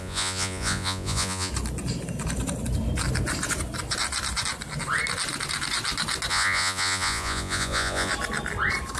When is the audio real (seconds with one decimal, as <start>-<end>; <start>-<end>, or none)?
1.5-6.3; 8.1-9.0